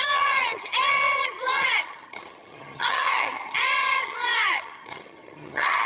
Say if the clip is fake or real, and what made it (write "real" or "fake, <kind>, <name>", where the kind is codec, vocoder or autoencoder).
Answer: fake, vocoder, HiFi-GAN